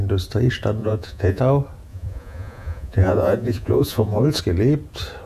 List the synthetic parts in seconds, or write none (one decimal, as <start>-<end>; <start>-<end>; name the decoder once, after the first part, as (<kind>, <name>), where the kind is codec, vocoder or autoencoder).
0.8-1.4 (vocoder, Vocos); 1.9-4.4